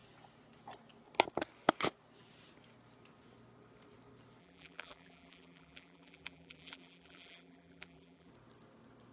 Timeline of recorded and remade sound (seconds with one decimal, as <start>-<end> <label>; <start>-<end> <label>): 0.0-4.4 recorded; 4.4-8.3 remade; 8.3-9.1 recorded